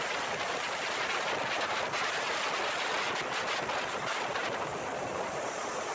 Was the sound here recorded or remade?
recorded